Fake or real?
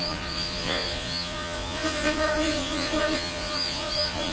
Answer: fake